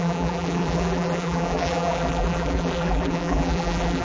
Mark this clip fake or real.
fake